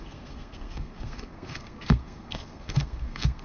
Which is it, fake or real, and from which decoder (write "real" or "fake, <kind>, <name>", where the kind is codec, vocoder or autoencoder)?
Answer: fake, codec, SNAC